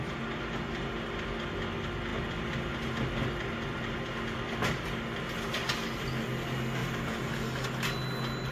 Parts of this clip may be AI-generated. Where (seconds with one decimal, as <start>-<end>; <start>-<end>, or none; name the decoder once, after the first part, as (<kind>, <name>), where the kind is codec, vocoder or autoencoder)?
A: none